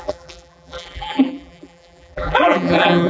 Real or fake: fake